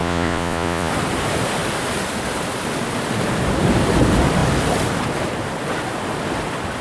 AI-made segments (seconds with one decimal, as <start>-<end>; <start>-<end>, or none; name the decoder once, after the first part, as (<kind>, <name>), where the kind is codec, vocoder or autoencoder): 0.0-0.9 (vocoder, Vocos)